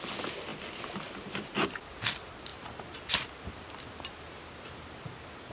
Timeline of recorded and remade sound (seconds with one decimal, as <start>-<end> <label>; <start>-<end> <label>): 0.0-5.5 recorded